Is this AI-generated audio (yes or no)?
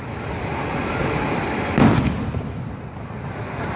no